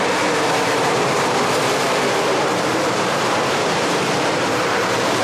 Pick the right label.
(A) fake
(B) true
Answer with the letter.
A